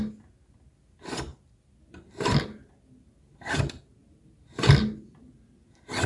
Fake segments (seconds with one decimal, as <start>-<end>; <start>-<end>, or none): none